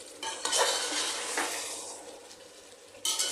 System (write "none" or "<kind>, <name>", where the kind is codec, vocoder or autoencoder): none